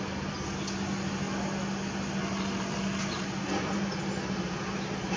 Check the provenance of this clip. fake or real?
real